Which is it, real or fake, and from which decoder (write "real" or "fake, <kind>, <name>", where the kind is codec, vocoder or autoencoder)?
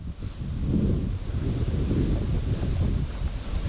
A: real